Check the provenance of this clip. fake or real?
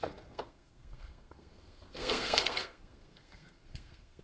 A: fake